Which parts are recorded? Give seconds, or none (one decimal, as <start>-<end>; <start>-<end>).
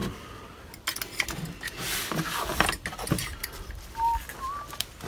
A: 0.0-5.1